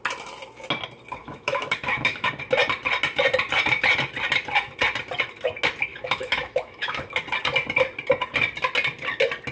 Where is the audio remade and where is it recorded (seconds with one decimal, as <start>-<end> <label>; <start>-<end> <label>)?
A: 0.0-1.2 recorded; 1.2-2.3 remade; 2.3-5.9 recorded; 5.9-7.2 remade; 7.2-9.5 recorded